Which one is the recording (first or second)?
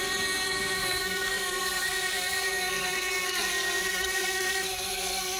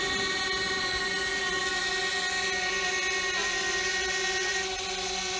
second